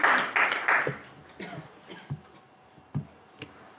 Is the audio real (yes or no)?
yes